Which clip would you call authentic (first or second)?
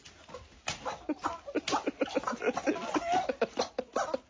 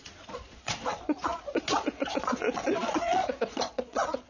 first